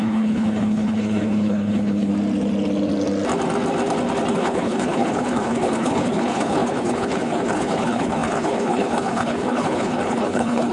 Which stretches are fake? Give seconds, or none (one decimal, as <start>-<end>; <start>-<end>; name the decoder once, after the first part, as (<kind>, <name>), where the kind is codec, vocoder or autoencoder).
0.0-2.1 (codec, HILCodec); 4.3-10.7